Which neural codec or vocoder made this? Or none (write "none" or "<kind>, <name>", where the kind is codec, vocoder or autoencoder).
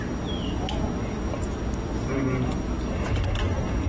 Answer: none